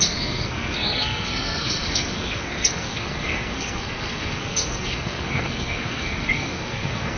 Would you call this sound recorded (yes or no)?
no